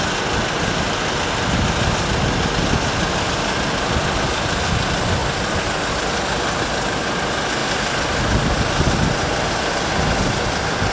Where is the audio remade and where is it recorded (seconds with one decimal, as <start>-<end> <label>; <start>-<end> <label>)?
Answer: 0.0-10.9 recorded